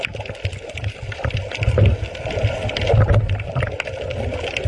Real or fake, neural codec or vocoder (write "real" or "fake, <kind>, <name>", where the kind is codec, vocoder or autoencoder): real